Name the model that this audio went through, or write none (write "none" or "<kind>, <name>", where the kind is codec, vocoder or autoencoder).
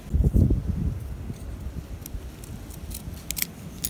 none